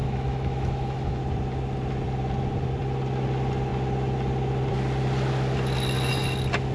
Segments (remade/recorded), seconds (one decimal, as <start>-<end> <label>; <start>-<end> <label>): 0.0-1.2 remade; 1.2-6.7 recorded